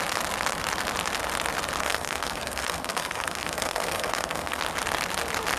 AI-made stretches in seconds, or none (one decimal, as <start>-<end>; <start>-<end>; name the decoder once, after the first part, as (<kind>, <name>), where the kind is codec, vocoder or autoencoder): 1.8-4.6 (codec, SNAC)